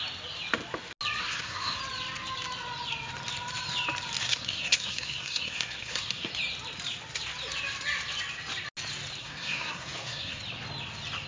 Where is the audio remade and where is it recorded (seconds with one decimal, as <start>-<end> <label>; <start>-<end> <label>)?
0.0-1.2 recorded; 1.2-1.8 remade; 1.8-4.2 recorded; 4.2-6.3 remade; 6.3-9.2 recorded; 9.2-10.4 remade; 10.4-11.3 recorded

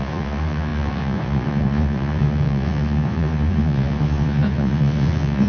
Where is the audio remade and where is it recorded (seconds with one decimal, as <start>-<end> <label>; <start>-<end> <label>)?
0.0-5.5 remade

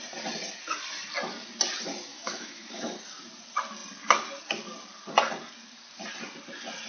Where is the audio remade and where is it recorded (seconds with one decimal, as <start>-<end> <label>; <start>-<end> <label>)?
0.0-2.1 recorded; 2.1-2.9 remade; 2.9-6.9 recorded

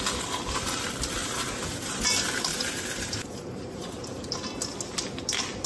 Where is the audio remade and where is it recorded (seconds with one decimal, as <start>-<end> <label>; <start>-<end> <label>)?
0.0-1.2 recorded; 1.2-2.0 remade; 2.0-2.5 recorded; 2.5-4.3 remade; 4.3-5.7 recorded

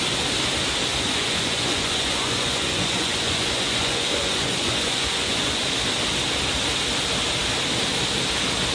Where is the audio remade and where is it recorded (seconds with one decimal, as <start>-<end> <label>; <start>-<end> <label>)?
0.0-0.9 recorded; 0.9-5.6 remade; 5.6-8.7 recorded